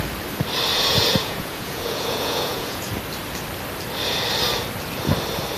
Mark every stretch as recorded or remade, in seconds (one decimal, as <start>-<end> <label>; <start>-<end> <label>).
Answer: 0.0-0.7 recorded; 0.7-2.9 remade; 2.9-5.6 recorded